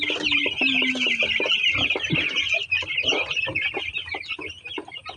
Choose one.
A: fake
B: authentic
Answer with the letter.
B